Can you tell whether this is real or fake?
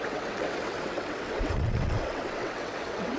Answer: fake